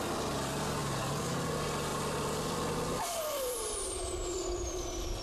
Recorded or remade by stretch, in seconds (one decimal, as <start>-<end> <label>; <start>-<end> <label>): 0.0-1.9 recorded; 1.9-5.2 remade